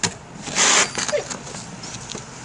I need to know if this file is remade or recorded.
recorded